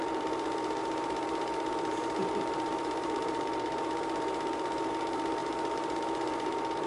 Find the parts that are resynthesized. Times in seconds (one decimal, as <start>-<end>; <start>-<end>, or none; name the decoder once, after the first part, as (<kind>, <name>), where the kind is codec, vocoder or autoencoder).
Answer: 0.0-6.9 (vocoder, BigVGAN v2)